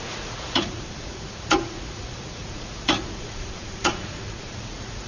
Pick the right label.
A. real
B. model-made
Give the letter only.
B